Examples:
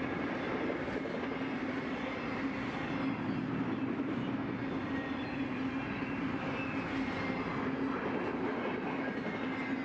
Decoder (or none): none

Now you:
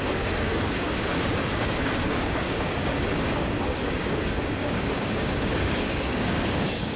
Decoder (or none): codec, DAC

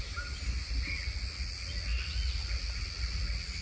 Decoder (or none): none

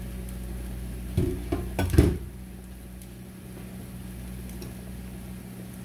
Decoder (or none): none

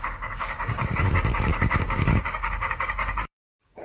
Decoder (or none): codec, DAC